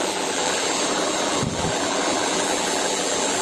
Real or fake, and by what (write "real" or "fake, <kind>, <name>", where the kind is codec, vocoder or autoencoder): fake, vocoder, BigVGAN v2